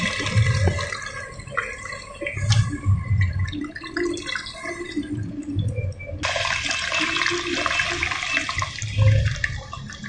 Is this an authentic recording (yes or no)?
yes